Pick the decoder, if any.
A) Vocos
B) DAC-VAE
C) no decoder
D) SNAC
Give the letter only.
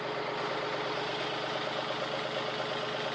C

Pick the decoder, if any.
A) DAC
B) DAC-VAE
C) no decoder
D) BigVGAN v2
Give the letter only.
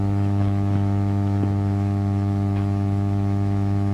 B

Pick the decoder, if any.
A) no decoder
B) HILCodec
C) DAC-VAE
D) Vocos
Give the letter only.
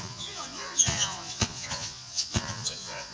D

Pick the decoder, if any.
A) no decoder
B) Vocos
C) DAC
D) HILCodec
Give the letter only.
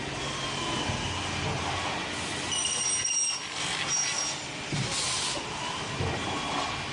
A